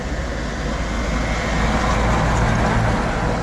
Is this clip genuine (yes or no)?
yes